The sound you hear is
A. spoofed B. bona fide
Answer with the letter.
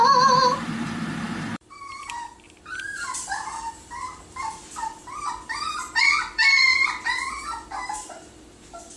A